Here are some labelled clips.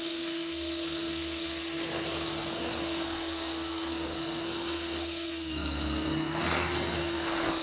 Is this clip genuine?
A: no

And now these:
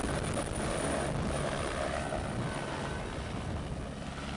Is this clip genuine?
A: yes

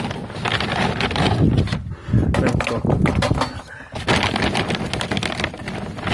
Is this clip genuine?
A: yes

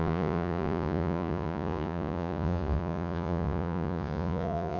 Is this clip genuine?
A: no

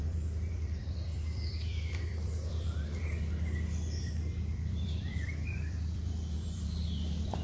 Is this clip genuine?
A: no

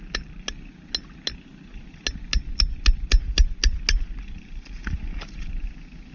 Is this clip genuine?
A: yes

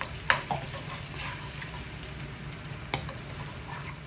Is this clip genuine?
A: yes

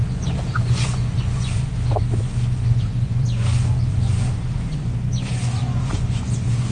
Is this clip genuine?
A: no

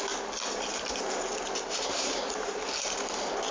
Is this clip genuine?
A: yes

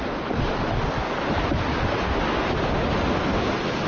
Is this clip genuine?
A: yes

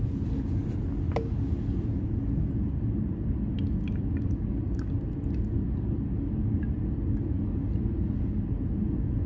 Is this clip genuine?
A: yes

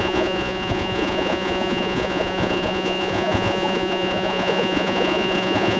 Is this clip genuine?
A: no